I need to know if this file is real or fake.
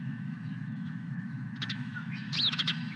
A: fake